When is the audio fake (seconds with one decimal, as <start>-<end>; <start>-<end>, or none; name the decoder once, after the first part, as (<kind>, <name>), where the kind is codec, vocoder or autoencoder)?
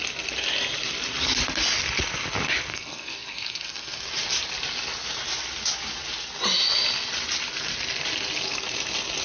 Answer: 2.7-4.0 (codec, SNAC)